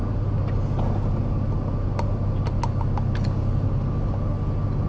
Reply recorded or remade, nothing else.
recorded